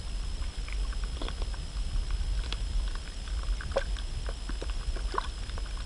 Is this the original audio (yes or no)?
yes